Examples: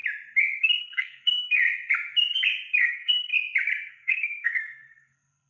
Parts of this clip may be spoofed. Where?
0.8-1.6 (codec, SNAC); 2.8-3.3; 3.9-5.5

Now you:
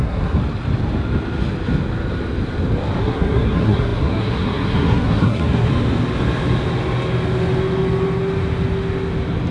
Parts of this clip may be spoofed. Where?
0.0-0.4 (codec, SNAC); 3.0-5.7